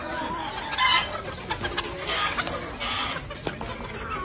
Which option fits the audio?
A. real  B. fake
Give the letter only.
A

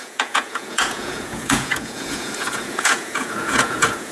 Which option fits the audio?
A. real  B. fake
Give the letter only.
B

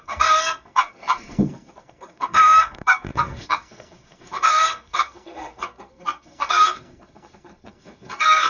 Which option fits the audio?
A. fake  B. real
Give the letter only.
A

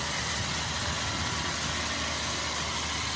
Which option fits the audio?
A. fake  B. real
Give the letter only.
B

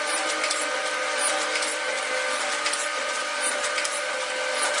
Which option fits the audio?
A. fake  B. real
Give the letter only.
B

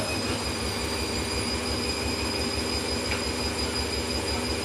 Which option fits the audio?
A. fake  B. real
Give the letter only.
B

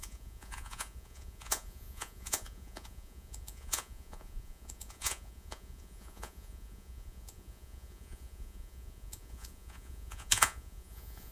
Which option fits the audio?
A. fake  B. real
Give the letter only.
A